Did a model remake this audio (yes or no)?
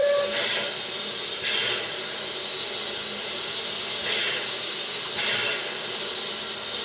no